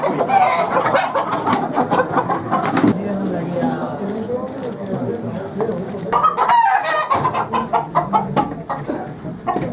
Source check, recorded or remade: recorded